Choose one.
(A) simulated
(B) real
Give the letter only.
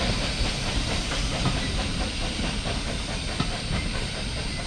B